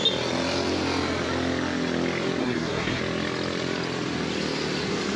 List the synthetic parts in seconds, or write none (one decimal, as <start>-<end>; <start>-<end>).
2.4-3.0